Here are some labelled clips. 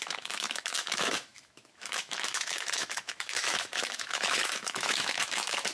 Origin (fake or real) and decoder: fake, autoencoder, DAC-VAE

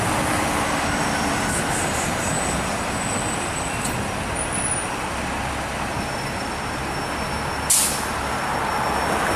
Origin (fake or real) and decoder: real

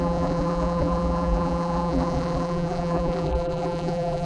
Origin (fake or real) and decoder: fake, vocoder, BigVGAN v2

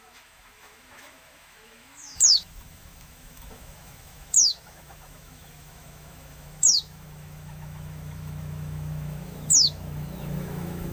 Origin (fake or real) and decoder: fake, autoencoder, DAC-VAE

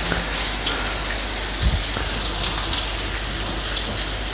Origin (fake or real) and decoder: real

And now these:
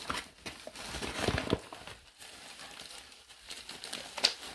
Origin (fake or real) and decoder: real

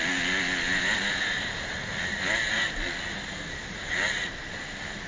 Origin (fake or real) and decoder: real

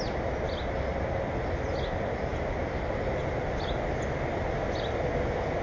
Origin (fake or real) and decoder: real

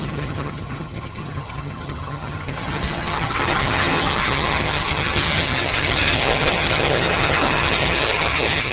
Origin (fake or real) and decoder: fake, vocoder, HiFi-GAN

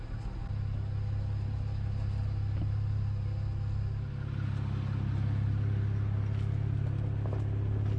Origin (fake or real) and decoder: real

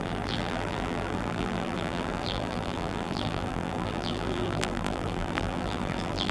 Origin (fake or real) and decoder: fake, vocoder, BigVGAN v2